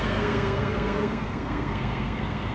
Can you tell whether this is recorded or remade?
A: remade